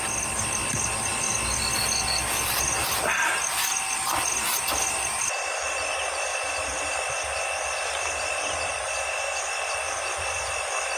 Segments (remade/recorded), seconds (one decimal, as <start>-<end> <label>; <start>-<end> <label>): 0.0-11.0 recorded